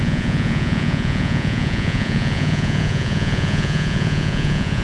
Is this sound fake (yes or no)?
yes